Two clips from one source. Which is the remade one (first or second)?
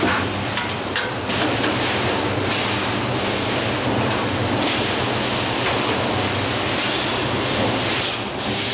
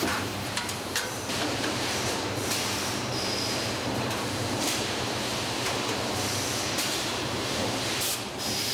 second